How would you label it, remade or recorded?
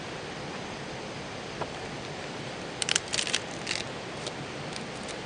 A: recorded